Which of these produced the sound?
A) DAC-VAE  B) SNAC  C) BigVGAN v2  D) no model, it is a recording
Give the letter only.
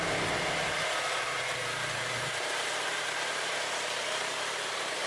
C